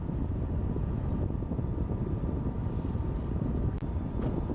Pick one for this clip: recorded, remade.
recorded